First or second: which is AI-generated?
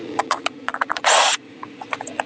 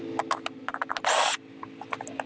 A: first